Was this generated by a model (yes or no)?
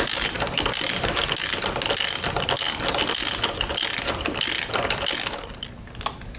no